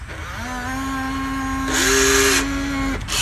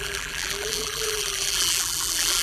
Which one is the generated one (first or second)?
second